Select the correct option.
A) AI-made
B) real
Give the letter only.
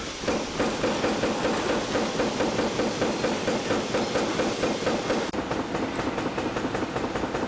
B